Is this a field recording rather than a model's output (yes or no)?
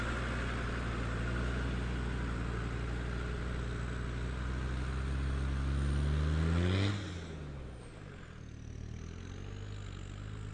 yes